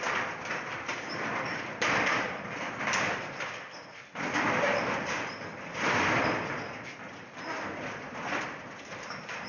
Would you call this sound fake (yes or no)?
yes